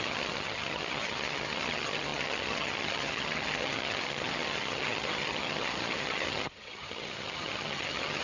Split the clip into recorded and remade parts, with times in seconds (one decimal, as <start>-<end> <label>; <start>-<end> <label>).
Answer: 0.0-8.2 remade